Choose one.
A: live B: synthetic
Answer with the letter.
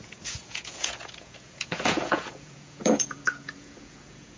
B